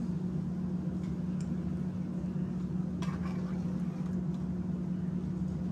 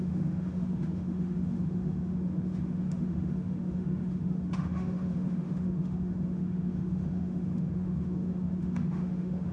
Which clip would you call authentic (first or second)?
first